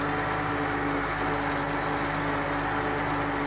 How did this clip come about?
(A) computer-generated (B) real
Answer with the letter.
B